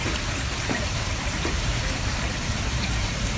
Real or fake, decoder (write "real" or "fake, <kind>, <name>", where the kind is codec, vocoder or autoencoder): fake, vocoder, BigVGAN v2